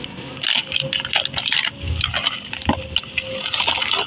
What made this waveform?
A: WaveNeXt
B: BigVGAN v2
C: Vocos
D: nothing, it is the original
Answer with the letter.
D